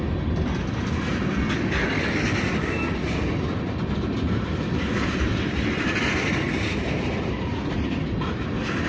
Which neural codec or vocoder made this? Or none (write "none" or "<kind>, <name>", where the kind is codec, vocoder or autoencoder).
none